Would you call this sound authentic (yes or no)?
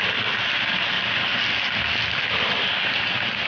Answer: yes